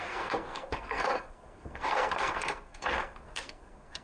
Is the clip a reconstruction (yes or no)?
yes